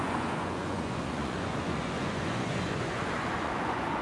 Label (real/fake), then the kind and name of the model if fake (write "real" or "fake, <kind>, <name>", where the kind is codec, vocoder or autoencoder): fake, vocoder, Vocos